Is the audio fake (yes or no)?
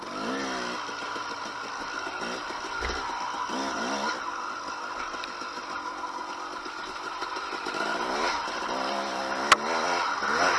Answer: no